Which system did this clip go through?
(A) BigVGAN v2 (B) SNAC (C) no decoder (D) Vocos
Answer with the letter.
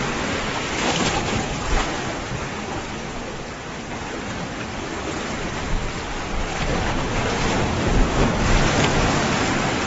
C